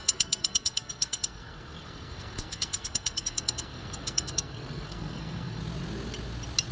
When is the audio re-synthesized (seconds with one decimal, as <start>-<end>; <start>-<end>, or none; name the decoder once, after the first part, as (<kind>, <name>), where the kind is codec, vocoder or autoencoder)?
0.0-5.6 (codec, SNAC)